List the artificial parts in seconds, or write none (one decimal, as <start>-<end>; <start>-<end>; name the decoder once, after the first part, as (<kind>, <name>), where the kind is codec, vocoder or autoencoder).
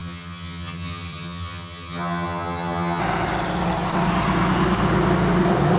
0.0-3.0 (vocoder, HiFi-GAN)